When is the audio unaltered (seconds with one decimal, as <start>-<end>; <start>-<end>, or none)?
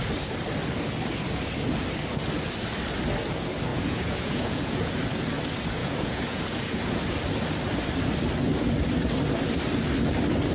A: 0.0-3.7; 4.9-5.8; 7.0-10.5